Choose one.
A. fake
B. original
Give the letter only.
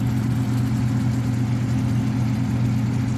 B